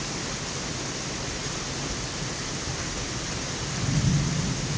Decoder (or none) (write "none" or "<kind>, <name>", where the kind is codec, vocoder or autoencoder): none